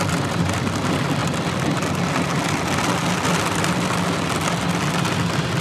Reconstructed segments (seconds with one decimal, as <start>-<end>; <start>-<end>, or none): none